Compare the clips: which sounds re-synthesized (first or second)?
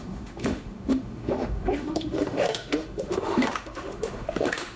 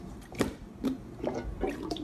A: first